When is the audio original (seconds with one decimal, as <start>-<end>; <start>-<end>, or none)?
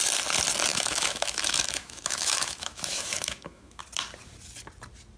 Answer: 0.0-0.7; 3.8-5.2